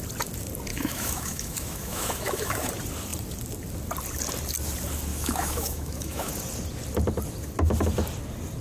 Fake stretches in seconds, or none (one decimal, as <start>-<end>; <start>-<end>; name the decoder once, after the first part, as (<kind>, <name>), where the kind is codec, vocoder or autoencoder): 0.7-2.7 (autoencoder, DAC-VAE); 5.1-6.3